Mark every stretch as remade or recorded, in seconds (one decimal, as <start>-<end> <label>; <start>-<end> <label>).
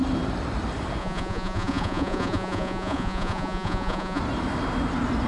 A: 0.0-1.0 recorded; 1.0-4.2 remade; 4.2-5.3 recorded